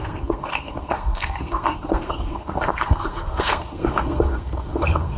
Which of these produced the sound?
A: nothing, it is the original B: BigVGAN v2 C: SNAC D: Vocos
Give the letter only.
C